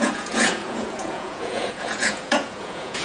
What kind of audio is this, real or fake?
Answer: fake